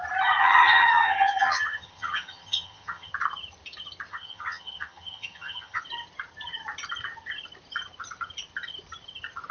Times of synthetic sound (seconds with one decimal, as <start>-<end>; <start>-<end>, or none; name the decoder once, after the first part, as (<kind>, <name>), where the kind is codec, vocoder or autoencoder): 0.4-3.1 (vocoder, HiFi-GAN); 4.1-5.8